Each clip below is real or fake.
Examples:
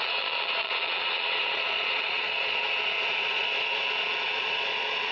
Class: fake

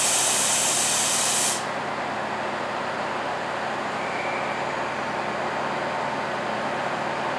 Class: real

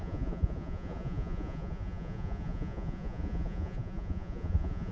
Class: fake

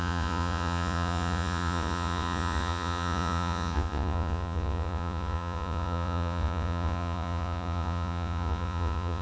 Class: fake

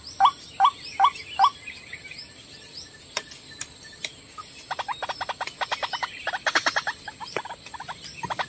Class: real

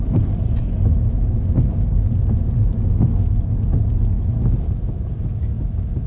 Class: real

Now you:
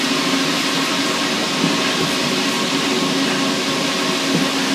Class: real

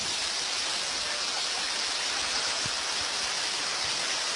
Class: real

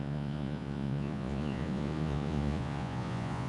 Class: fake